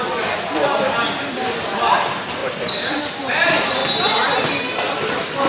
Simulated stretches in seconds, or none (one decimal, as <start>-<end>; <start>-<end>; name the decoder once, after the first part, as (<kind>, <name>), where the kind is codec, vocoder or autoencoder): none